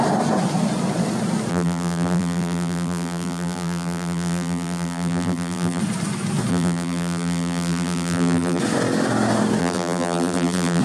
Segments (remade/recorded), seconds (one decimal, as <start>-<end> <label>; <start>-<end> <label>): 0.0-1.5 recorded; 1.5-5.8 remade; 5.8-6.5 recorded; 6.5-8.6 remade; 8.6-9.6 recorded; 9.6-10.8 remade